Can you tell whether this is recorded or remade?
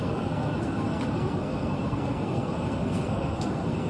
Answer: remade